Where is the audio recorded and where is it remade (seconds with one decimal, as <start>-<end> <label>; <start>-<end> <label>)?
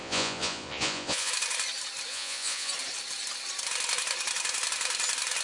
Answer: 0.0-1.3 remade; 1.3-2.1 recorded; 2.1-2.7 remade; 2.7-5.4 recorded